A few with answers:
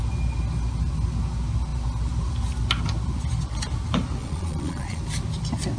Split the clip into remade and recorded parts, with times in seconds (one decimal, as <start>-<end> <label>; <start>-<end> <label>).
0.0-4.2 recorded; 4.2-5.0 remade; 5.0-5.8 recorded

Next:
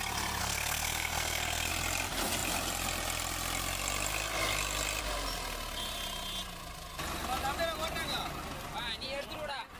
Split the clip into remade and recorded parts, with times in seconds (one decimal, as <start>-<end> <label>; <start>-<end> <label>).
0.0-0.4 recorded; 0.4-1.7 remade; 1.7-9.8 recorded

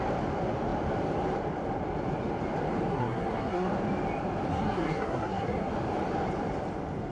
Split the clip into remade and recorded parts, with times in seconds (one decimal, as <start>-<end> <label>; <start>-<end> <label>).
0.0-2.9 recorded; 2.9-3.7 remade; 3.7-4.5 recorded; 4.5-5.7 remade; 5.7-7.1 recorded

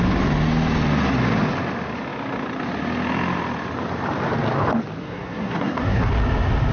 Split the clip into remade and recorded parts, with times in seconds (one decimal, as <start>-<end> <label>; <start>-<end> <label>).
0.0-5.0 recorded; 5.0-6.1 remade; 6.1-6.7 recorded

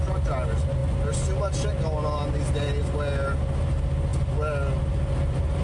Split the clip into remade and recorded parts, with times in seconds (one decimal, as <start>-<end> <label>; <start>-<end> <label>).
0.0-5.6 recorded

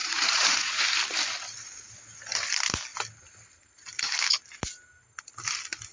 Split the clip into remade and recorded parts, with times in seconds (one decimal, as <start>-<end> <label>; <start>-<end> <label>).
0.0-0.8 remade; 0.8-5.9 recorded

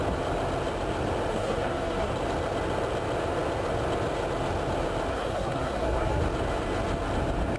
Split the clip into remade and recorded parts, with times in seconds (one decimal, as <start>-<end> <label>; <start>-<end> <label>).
0.0-1.3 recorded; 1.3-2.1 remade; 2.1-5.1 recorded; 5.1-6.2 remade; 6.2-7.6 recorded

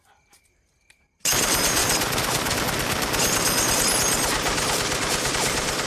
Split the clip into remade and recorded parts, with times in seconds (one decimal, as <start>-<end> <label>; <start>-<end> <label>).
0.0-1.8 remade; 1.8-5.3 recorded; 5.3-5.9 remade